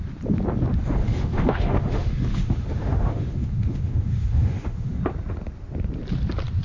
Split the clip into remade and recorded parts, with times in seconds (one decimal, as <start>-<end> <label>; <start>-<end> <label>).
0.0-1.0 recorded; 1.0-5.0 remade; 5.0-6.6 recorded

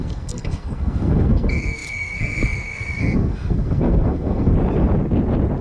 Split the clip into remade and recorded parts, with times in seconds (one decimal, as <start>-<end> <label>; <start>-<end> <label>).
0.0-4.5 remade; 4.5-5.6 recorded

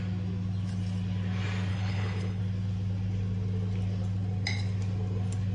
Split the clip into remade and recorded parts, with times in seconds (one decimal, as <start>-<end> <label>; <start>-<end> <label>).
0.0-1.7 recorded; 1.7-2.4 remade; 2.4-5.5 recorded